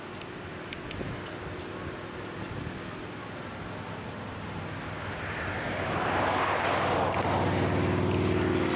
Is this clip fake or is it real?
real